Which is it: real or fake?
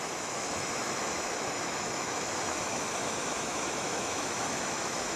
fake